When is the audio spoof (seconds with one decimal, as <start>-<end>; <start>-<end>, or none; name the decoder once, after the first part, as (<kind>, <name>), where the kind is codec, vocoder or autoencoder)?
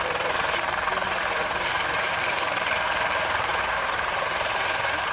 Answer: 0.0-5.1 (vocoder, BigVGAN v2)